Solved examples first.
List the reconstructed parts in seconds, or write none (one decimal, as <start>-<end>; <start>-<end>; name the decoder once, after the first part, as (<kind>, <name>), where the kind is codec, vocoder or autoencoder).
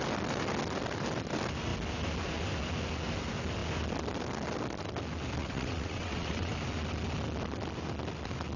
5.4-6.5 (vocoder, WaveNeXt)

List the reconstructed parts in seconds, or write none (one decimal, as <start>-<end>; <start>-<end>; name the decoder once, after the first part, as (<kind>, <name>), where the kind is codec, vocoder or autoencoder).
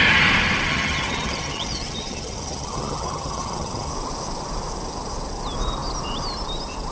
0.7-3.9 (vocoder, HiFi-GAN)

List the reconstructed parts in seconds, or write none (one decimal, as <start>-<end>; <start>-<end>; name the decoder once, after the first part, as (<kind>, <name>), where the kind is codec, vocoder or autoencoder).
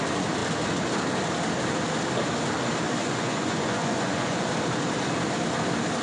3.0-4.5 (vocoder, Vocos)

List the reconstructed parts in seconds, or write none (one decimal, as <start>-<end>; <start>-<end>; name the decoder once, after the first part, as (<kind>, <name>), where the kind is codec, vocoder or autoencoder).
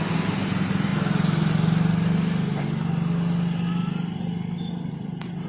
none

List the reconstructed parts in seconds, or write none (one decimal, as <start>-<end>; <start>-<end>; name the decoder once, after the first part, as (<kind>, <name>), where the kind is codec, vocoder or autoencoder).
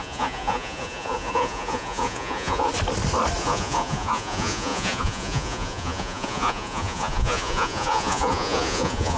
0.0-2.7 (vocoder, Vocos); 3.4-9.2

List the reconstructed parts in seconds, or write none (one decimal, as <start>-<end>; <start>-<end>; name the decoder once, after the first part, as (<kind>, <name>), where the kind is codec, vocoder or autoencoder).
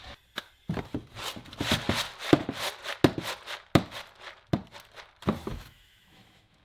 5.5-6.6 (autoencoder, DAC-VAE)